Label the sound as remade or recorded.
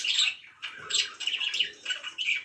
recorded